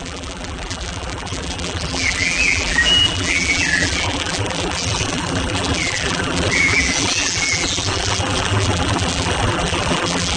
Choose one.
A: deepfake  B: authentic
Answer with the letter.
A